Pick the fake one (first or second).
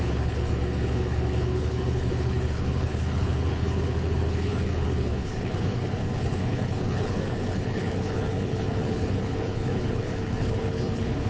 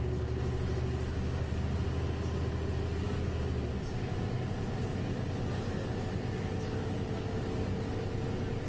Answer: first